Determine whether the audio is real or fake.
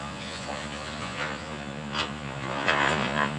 fake